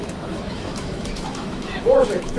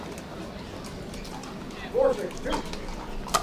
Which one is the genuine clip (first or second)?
second